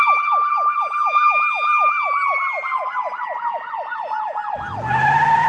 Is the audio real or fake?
real